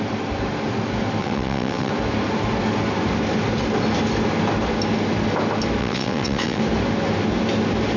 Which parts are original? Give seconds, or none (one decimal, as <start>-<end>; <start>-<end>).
0.0-1.2; 1.9-5.8; 6.6-8.0